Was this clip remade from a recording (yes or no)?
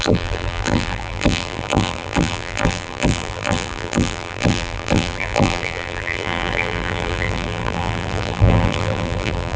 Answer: yes